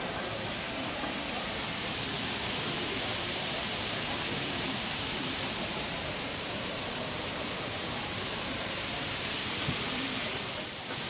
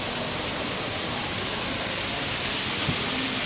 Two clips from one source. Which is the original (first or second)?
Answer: second